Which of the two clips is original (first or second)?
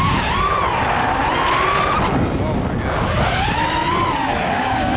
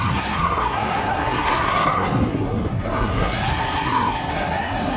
first